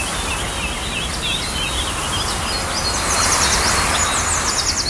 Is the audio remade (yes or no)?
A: no